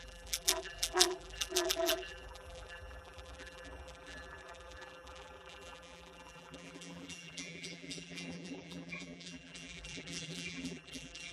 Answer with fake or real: fake